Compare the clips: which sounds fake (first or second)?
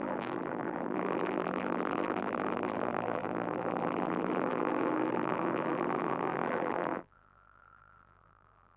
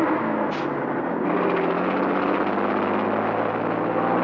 first